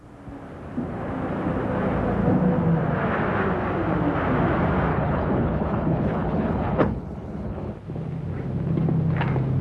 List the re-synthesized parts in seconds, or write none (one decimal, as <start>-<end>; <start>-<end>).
4.9-7.7